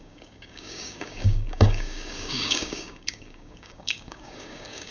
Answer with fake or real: fake